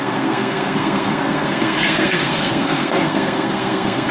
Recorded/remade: remade